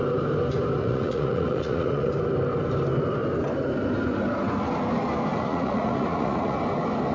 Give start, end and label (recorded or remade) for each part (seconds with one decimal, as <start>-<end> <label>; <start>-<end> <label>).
0.0-0.8 recorded; 0.8-2.1 remade; 2.1-5.3 recorded; 5.3-6.6 remade; 6.6-7.1 recorded